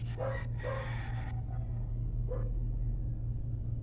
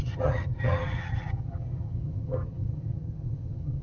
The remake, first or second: second